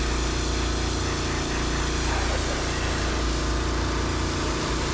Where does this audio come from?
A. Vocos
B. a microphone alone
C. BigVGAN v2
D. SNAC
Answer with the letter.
B